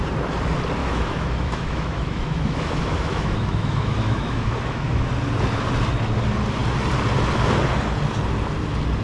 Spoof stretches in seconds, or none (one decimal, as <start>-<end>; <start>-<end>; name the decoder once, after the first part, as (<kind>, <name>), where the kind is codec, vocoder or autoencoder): 0.8-5.1 (autoencoder, DAC-VAE)